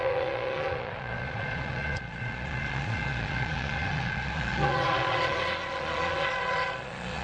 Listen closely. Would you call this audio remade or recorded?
remade